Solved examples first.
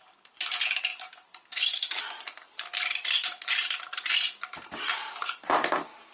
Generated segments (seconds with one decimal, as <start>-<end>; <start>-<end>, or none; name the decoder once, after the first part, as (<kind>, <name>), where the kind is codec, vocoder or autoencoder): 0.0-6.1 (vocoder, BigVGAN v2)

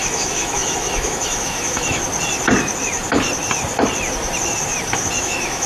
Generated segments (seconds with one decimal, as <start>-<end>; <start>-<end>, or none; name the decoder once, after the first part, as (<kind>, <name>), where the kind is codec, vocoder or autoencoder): 0.0-2.0 (autoencoder, DAC-VAE); 5.2-5.7

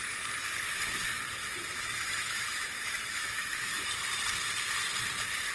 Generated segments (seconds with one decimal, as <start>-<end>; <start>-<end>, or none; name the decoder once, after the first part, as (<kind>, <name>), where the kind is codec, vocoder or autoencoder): 1.4-3.9 (autoencoder, DAC-VAE)

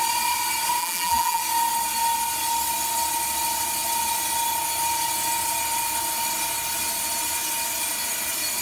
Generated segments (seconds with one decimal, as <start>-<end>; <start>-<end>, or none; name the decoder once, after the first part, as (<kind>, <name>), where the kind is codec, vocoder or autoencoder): 0.8-1.4 (vocoder, BigVGAN v2)